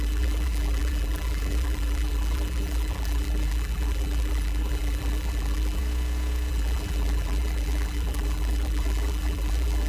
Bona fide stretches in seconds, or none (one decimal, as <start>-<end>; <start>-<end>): 5.8-6.5